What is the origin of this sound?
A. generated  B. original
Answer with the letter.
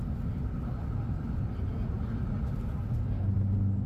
B